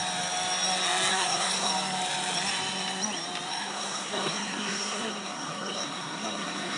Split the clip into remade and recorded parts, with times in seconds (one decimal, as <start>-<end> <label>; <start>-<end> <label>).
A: 0.0-1.1 recorded; 1.1-1.7 remade; 1.7-3.5 recorded; 3.5-6.8 remade